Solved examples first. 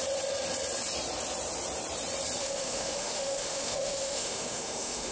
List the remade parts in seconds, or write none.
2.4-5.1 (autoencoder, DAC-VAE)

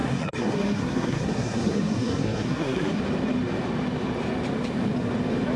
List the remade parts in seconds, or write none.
0.0-3.0 (codec, SNAC)